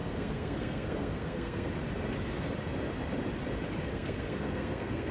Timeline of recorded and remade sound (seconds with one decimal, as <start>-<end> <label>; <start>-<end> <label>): 0.0-1.7 remade; 1.7-3.9 recorded; 3.9-5.1 remade